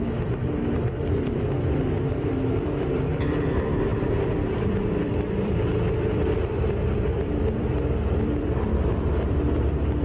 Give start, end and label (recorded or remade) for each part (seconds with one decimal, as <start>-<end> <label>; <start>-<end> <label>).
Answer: 0.0-10.0 remade